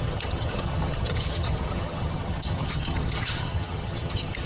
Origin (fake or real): fake